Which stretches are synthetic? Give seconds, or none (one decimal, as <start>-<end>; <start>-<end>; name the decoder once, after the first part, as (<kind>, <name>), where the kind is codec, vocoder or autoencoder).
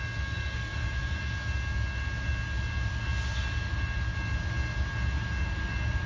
0.7-1.2 (vocoder, BigVGAN v2)